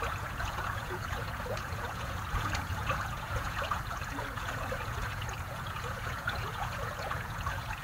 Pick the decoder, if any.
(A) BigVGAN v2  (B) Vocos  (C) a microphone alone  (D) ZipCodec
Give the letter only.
B